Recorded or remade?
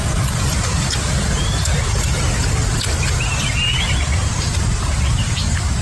recorded